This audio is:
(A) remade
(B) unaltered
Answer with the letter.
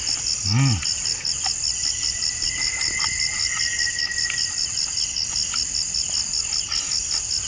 B